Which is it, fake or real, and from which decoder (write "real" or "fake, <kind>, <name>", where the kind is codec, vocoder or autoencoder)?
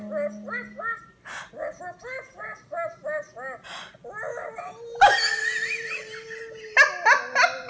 real